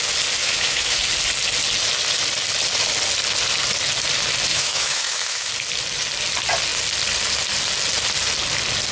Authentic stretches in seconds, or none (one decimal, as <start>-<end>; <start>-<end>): 0.0-0.4; 1.0-4.5; 5.5-8.9